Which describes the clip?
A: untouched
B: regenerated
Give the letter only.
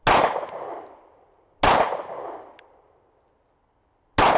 A